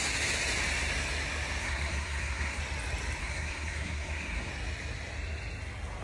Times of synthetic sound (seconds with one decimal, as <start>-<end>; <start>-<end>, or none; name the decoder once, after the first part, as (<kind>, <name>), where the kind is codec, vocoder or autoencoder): 1.6-2.6 (codec, SNAC); 3.2-4.5